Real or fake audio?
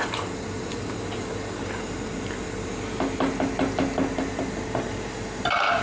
real